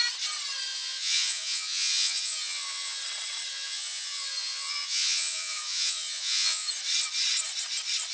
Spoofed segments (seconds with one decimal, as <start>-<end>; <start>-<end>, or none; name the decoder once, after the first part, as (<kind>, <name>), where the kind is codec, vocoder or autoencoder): 0.7-3.0 (vocoder, Vocos); 3.5-6.7